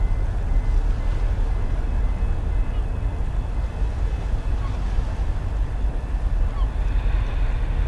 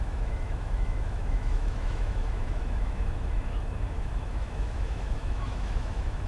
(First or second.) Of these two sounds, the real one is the first